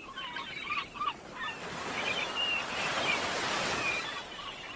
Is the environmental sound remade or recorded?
remade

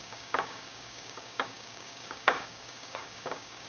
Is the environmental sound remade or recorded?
remade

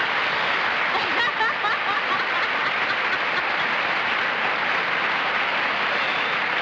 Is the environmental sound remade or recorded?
recorded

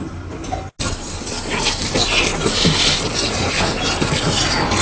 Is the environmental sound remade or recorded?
recorded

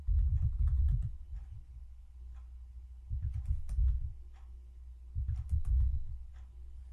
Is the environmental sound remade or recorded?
recorded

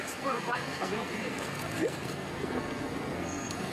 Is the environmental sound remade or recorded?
remade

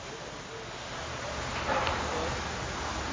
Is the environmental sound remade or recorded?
recorded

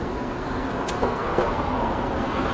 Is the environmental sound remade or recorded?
remade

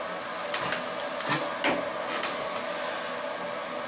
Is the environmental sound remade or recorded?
recorded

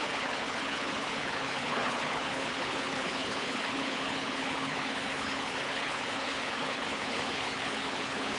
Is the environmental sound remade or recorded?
remade